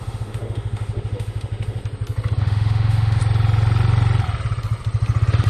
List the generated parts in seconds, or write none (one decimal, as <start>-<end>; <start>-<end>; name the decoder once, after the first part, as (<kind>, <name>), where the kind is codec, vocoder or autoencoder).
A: 0.0-1.8 (autoencoder, DAC-VAE); 2.4-3.2